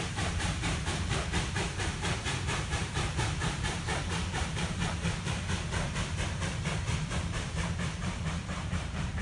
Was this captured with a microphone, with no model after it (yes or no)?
no